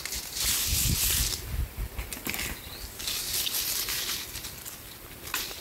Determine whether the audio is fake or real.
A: real